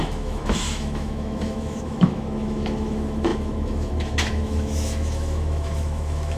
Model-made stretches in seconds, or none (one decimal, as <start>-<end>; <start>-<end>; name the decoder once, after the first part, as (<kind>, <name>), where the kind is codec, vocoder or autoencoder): 0.0-6.4 (autoencoder, DAC-VAE)